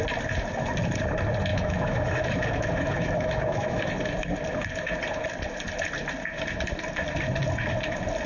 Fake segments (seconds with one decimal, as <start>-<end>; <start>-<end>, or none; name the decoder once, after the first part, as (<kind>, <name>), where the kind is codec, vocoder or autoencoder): 1.5-3.9 (autoencoder, DAC-VAE)

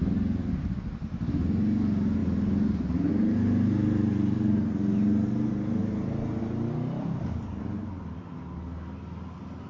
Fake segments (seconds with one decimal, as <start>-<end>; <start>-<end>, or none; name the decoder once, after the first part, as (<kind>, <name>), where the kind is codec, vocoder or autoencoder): none

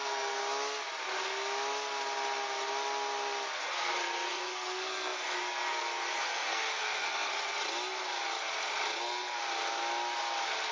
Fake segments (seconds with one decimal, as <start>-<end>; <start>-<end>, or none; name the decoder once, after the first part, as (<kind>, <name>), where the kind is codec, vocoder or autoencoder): 0.0-0.4 (codec, SNAC); 3.6-7.3; 9.0-9.4

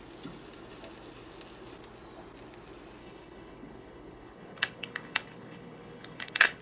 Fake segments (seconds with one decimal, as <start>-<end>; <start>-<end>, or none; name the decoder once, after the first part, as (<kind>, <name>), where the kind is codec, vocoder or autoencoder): 3.0-6.6 (codec, HILCodec)